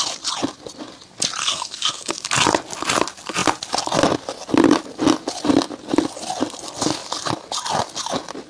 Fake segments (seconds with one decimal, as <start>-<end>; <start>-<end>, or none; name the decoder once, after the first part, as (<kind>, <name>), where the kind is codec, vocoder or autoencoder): 1.4-2.1 (codec, SNAC)